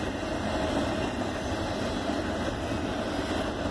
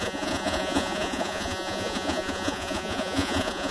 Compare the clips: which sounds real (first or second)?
first